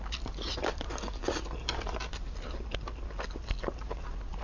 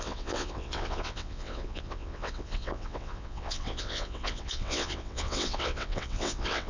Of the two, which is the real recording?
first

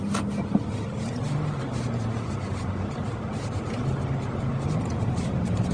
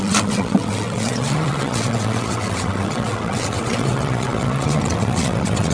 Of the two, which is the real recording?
first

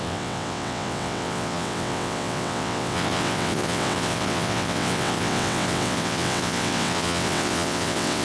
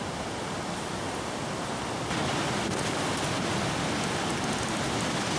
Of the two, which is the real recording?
second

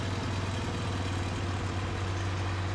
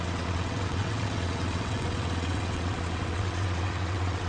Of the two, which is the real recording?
first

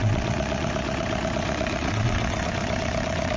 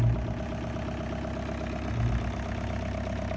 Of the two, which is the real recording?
second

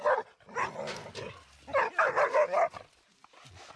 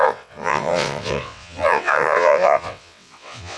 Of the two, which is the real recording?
first